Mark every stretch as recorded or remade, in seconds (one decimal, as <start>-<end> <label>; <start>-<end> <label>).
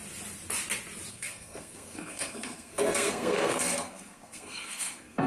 0.0-1.1 recorded; 1.1-5.3 remade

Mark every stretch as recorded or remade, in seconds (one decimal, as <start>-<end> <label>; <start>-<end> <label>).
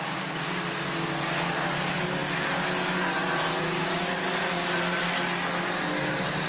0.0-6.5 recorded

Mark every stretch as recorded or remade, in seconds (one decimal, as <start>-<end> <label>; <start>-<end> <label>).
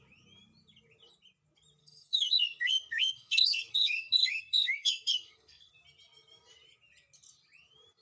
0.0-1.8 recorded; 1.8-5.7 remade; 5.7-8.0 recorded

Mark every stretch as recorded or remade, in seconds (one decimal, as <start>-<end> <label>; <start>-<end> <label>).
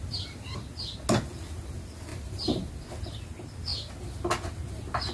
0.0-5.1 recorded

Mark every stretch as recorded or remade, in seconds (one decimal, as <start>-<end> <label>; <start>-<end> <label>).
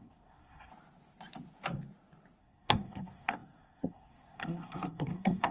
0.0-0.7 remade; 0.7-2.4 recorded; 2.4-5.5 remade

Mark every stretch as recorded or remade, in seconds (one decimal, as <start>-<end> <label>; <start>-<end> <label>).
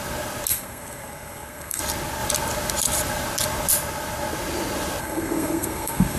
0.0-0.5 recorded; 0.5-1.8 remade; 1.8-5.0 recorded; 5.0-6.2 remade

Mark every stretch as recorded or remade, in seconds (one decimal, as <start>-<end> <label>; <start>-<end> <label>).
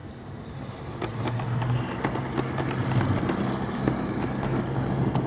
0.0-5.3 recorded